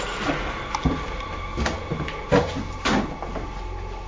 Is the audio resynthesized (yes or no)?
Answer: no